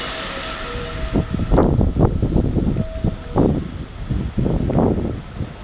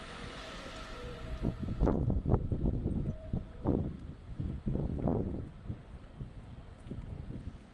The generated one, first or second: second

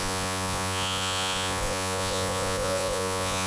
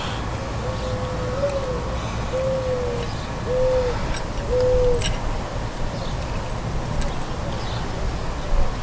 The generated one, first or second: first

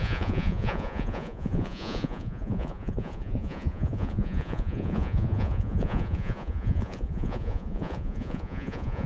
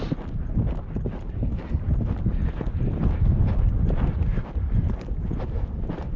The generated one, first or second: first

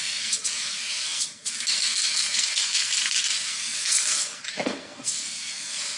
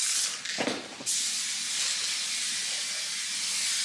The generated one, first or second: first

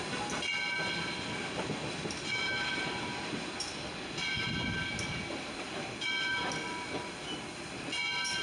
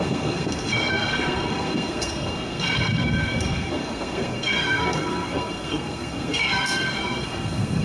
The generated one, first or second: second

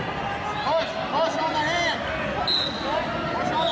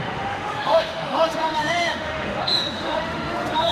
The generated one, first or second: second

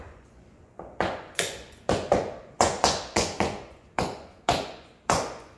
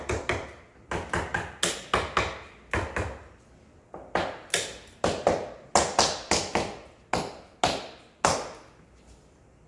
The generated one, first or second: first